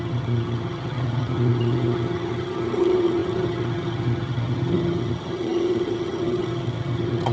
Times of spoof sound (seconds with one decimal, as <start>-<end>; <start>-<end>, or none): 0.0-7.3

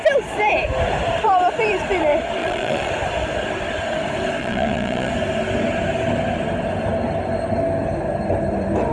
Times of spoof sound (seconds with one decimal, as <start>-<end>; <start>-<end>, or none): 2.4-2.9; 4.4-5.1

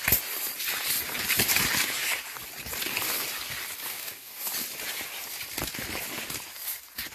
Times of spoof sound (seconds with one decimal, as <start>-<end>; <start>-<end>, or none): 3.9-4.5

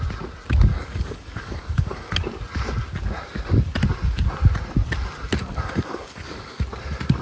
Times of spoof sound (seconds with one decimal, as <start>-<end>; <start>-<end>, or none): 0.7-2.1; 5.4-6.6

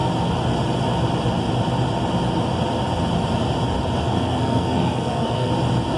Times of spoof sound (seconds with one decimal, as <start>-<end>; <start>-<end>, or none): 4.0-5.5

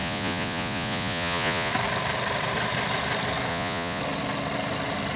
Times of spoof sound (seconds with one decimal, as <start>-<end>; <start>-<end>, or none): 0.0-1.7; 3.5-4.0

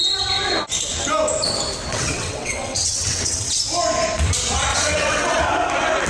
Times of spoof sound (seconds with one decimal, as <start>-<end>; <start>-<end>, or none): 1.9-3.6; 4.7-5.4

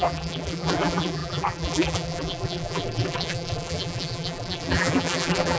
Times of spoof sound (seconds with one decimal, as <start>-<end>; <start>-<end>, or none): 0.0-5.6